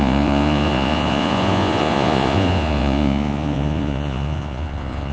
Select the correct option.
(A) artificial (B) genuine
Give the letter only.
A